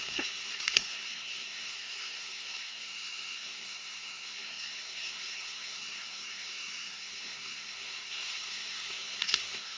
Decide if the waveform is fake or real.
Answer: fake